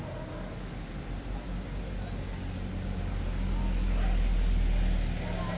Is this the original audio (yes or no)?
yes